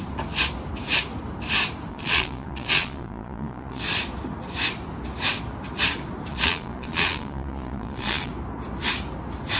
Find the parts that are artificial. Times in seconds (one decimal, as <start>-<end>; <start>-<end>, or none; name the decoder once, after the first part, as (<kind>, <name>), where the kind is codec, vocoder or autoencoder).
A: 1.9-3.8 (vocoder, Vocos); 6.3-8.3

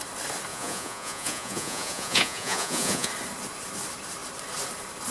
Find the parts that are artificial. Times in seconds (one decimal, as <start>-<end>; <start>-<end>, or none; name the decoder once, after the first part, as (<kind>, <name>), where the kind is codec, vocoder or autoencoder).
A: 0.5-3.1 (vocoder, Vocos)

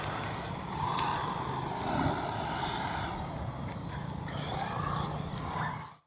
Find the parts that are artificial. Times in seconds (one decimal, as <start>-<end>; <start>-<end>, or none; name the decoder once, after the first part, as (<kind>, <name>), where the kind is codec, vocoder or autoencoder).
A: none

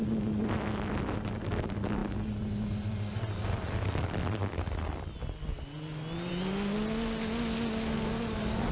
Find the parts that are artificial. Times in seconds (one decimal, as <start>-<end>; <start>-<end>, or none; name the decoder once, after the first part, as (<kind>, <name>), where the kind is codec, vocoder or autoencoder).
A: none